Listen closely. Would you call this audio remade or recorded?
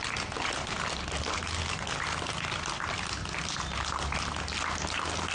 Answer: recorded